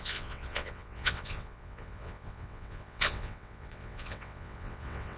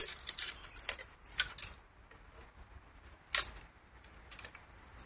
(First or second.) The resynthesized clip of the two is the first